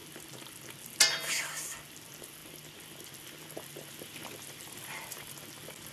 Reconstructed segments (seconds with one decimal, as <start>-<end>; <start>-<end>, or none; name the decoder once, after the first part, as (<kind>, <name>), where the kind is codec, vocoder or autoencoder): none